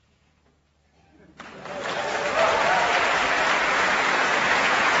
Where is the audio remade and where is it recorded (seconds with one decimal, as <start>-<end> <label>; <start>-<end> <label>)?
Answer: 0.0-0.7 remade; 0.7-3.6 recorded; 3.6-5.0 remade